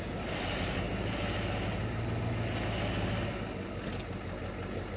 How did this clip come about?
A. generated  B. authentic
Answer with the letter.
B